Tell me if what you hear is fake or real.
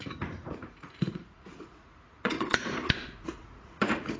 fake